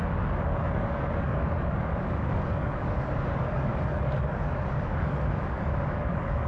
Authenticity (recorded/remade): remade